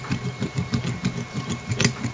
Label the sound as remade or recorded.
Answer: recorded